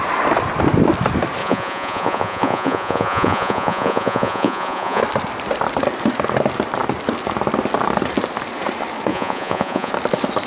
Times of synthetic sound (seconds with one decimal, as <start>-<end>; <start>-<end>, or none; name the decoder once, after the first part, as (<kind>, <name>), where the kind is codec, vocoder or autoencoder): 1.4-5.0 (vocoder, Vocos); 9.1-9.9